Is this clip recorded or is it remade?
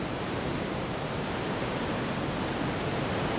remade